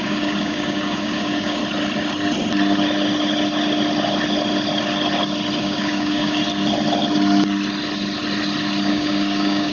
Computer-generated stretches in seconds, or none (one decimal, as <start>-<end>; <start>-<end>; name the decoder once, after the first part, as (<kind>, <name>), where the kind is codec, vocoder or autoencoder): 0.0-1.6 (codec, DAC); 5.6-6.4; 8.9-9.7